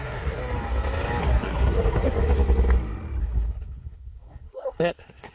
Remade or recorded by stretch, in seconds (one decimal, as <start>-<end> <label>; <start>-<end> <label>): 0.0-0.4 remade; 0.4-1.2 recorded; 1.2-2.2 remade; 2.2-3.2 recorded; 3.2-5.3 remade